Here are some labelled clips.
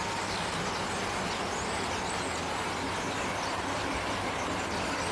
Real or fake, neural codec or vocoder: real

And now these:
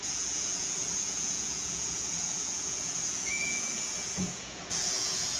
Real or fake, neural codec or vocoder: fake, vocoder, Vocos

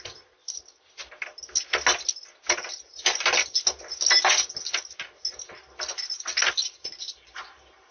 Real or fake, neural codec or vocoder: real